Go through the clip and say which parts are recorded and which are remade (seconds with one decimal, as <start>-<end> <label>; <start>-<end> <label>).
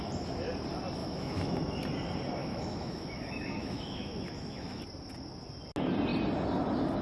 0.0-1.0 recorded; 1.0-1.6 remade; 1.6-2.4 recorded; 2.4-4.8 remade; 4.8-7.0 recorded